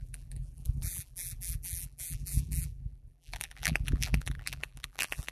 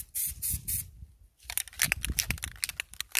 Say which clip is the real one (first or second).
second